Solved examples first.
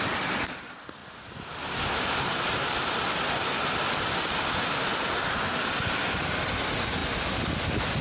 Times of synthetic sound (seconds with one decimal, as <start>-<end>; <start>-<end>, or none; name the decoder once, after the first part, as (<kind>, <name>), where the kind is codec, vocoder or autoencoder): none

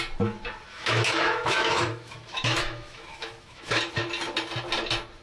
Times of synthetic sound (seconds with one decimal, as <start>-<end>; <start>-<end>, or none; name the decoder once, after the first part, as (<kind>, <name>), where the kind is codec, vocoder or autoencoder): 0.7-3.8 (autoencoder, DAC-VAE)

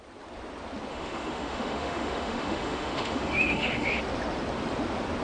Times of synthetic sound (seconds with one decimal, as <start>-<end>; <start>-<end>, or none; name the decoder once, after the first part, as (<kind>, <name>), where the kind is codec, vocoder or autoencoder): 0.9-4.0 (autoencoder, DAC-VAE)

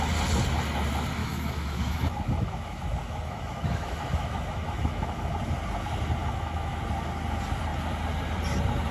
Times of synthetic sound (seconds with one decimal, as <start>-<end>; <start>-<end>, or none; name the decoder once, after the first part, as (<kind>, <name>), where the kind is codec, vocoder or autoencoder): 1.2-5.3 (autoencoder, DAC-VAE); 6.2-6.8

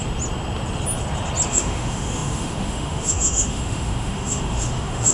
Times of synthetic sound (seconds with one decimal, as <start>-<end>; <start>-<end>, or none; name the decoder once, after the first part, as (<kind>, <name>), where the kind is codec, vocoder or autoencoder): 1.5-5.1 (autoencoder, DAC-VAE)

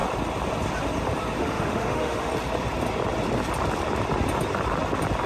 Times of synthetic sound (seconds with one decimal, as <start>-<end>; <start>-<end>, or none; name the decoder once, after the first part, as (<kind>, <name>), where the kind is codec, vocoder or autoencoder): 1.4-2.3 (autoencoder, DAC-VAE)